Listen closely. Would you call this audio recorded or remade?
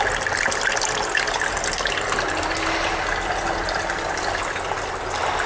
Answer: recorded